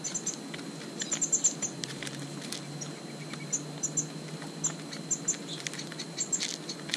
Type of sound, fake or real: real